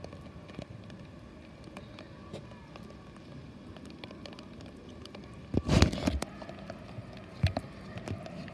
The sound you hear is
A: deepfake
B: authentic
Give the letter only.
B